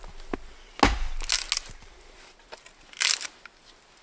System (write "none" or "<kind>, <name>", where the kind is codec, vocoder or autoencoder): none